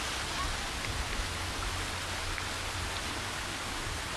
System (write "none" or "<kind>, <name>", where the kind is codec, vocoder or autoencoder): none